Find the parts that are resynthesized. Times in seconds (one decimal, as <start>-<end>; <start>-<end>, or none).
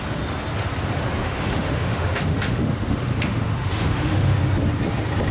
1.2-4.4